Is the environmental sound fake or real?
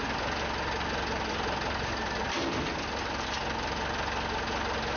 real